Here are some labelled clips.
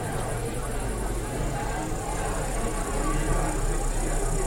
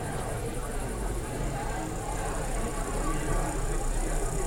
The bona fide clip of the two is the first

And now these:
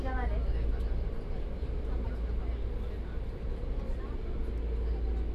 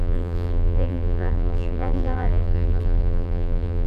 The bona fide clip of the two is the first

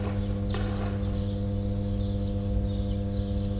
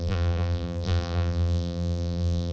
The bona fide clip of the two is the first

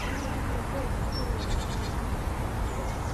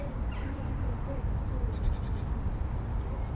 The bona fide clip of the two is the first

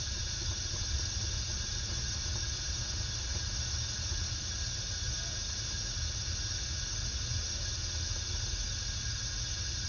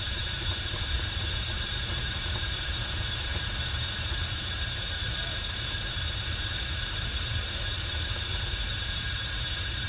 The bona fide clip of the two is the first